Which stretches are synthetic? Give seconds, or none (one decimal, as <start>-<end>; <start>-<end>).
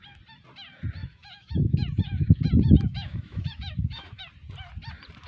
1.0-4.2